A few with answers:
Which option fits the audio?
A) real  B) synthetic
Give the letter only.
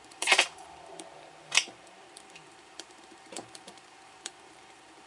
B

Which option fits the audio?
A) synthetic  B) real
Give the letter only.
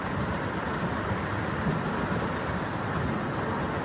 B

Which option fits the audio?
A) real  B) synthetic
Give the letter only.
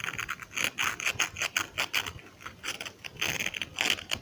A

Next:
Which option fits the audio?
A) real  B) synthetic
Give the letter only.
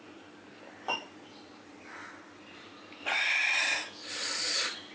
B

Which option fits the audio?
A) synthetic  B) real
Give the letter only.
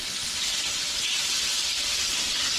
B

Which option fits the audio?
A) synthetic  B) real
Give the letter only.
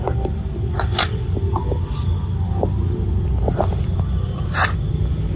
B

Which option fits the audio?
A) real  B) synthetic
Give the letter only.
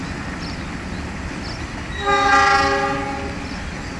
A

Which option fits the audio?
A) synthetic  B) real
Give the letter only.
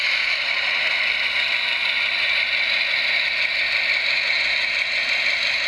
A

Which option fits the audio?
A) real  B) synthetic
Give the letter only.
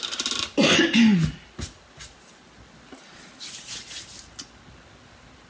A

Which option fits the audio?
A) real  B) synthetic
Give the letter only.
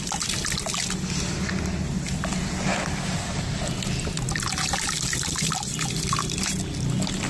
A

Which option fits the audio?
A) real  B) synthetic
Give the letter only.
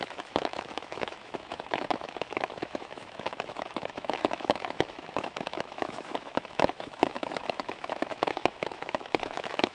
B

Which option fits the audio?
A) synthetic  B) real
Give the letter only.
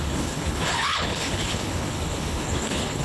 A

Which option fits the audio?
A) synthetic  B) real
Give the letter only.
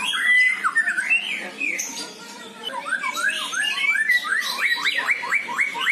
A